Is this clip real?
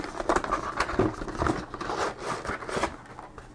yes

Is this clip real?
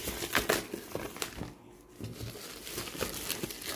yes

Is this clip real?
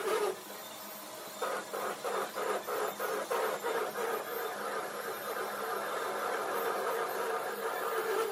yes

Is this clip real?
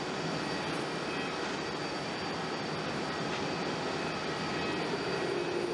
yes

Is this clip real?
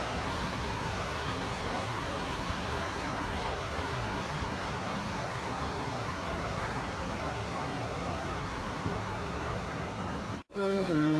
no